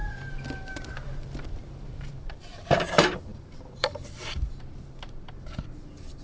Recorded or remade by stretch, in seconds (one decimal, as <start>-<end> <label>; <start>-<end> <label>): 0.0-6.2 remade